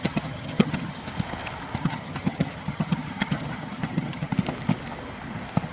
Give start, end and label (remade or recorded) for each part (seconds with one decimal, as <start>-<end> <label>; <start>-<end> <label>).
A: 0.0-1.0 remade; 1.0-1.8 recorded; 1.8-4.3 remade; 4.3-5.7 recorded